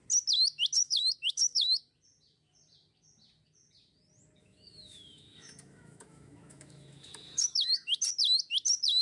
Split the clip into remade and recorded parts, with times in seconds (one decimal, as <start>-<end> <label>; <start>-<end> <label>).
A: 0.0-0.8 recorded; 0.8-1.8 remade; 1.8-4.4 recorded; 4.4-8.0 remade; 8.0-9.0 recorded